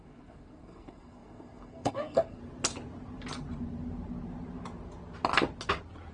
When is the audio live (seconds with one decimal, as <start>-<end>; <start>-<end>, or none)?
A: 2.4-6.1